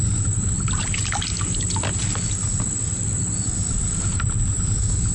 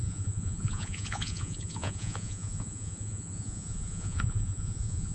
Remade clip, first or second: second